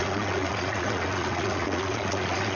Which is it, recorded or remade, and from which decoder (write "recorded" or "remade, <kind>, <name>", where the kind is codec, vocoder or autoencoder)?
remade, vocoder, Vocos